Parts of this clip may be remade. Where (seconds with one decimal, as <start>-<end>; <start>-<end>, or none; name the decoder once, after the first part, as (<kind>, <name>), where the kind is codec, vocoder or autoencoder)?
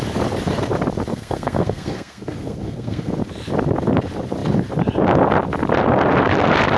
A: 1.1-3.1 (codec, SNAC)